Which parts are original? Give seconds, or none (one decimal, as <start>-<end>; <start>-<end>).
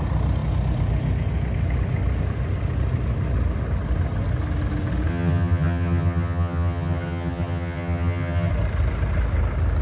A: 0.0-5.1; 8.5-9.8